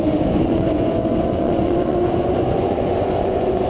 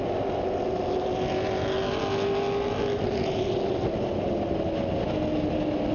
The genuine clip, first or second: second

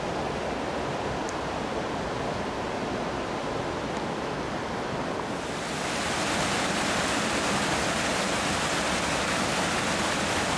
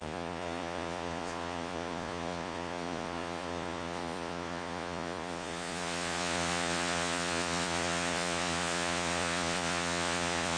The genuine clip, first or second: first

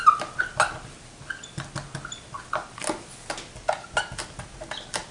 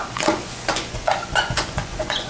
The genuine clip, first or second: first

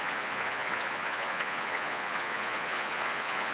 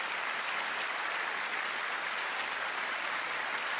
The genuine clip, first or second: second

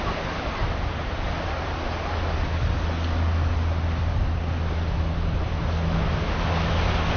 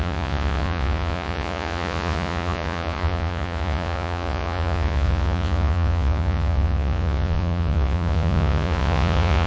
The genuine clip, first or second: first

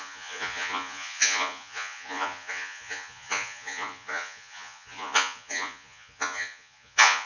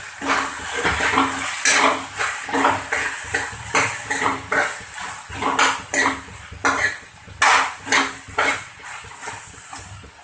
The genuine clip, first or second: second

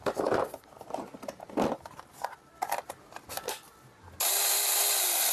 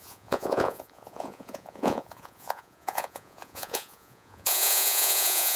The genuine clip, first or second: first